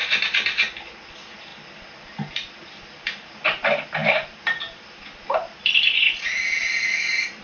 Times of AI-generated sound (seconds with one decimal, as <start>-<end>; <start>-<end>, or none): 1.1-7.4